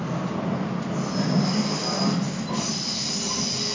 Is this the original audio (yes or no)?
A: yes